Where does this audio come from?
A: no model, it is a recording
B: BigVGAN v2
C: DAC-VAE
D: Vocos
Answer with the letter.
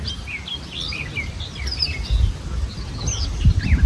A